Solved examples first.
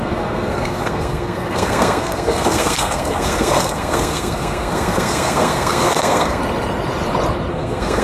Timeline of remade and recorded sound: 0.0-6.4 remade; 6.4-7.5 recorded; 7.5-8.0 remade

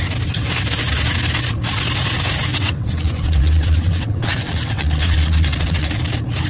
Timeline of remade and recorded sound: 0.0-2.5 recorded; 2.5-6.0 remade; 6.0-6.5 recorded

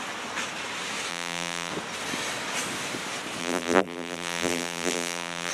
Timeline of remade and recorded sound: 0.0-1.1 recorded; 1.1-1.7 remade; 1.7-3.4 recorded; 3.4-5.5 remade

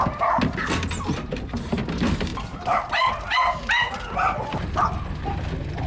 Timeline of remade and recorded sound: 0.0-5.9 recorded

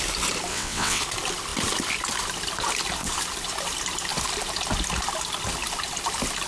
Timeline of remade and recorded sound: 0.0-0.5 recorded; 0.5-1.0 remade; 1.0-6.5 recorded

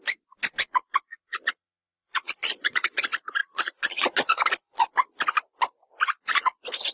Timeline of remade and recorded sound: 0.0-1.1 recorded; 1.1-3.0 remade; 3.0-3.4 recorded; 3.4-4.9 remade; 4.9-6.9 recorded